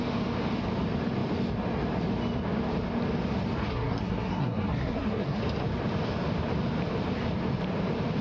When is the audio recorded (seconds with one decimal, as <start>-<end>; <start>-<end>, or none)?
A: 0.0-3.7; 5.4-8.2